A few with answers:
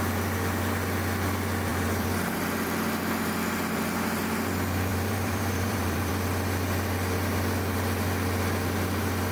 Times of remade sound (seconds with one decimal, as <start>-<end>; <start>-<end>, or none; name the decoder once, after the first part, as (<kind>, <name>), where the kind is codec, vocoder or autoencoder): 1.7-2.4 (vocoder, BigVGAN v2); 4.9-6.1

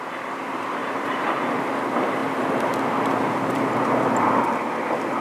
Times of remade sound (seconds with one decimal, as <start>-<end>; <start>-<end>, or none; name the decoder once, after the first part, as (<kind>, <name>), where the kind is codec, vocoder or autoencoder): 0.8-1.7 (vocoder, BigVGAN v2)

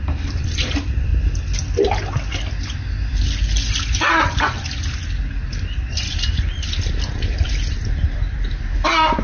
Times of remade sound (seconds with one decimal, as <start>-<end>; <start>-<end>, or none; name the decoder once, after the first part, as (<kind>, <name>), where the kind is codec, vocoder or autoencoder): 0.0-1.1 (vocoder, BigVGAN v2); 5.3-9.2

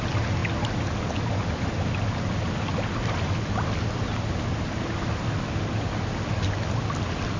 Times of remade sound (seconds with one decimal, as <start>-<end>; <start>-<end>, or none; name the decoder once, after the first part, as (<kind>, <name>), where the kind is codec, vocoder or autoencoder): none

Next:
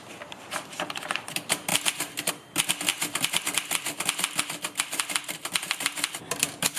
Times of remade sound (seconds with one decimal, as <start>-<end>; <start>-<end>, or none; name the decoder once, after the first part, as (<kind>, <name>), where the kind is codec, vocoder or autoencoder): 0.0-6.8 (vocoder, BigVGAN v2)

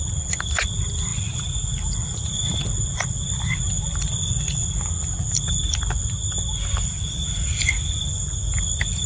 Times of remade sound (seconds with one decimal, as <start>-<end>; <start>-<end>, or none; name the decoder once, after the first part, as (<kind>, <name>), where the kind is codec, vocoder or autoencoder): none

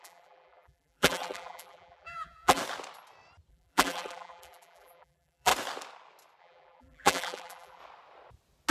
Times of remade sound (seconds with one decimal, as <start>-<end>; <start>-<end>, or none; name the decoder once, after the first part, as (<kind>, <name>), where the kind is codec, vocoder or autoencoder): 0.0-2.6 (vocoder, BigVGAN v2); 3.5-5.5; 6.4-7.8

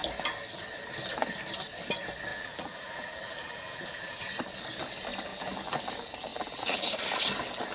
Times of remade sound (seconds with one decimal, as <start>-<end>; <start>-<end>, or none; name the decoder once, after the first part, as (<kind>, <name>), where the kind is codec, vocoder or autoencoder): 2.3-4.3 (vocoder, BigVGAN v2); 5.3-5.8; 6.3-6.9